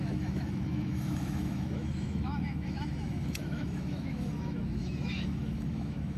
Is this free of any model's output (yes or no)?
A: no